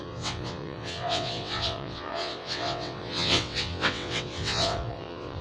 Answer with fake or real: fake